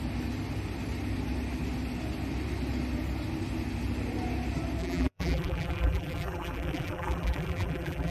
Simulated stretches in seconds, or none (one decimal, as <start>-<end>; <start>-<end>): 4.8-8.1